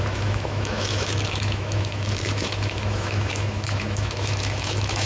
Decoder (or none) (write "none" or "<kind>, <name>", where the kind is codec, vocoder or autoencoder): autoencoder, DAC-VAE